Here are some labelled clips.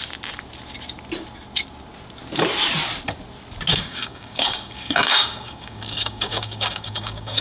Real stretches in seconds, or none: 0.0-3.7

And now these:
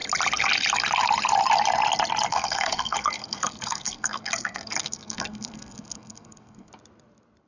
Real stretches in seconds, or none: 0.0-2.3; 6.7-7.5

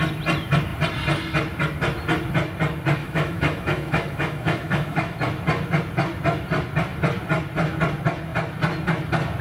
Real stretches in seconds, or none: 0.0-3.0; 5.2-9.4

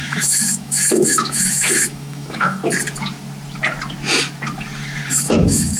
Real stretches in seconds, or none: 2.6-5.1

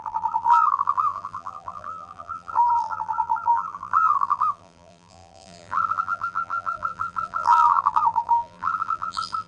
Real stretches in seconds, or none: none